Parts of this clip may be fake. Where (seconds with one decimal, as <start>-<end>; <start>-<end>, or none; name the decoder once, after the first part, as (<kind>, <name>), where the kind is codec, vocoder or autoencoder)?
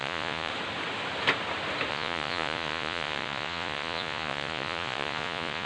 0.0-0.5 (vocoder, Vocos); 1.9-5.7